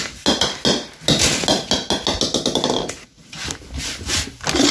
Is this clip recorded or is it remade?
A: recorded